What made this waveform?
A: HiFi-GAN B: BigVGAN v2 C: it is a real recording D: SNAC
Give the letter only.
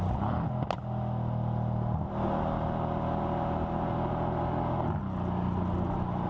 C